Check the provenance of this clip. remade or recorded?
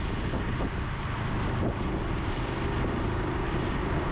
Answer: recorded